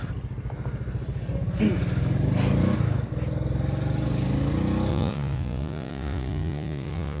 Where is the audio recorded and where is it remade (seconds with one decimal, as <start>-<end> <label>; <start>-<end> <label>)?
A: 0.0-4.9 recorded; 4.9-7.2 remade